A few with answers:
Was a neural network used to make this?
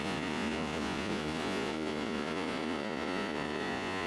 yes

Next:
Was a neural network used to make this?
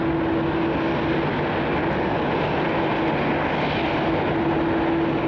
no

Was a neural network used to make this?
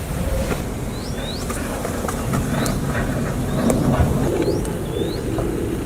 no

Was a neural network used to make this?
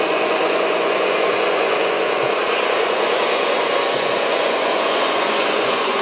yes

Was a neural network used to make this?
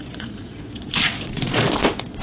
yes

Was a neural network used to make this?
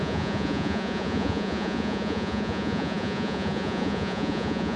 yes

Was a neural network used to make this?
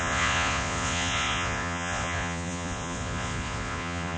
yes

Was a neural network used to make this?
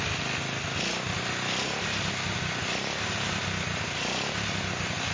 no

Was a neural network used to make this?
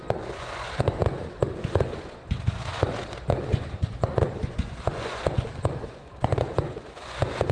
yes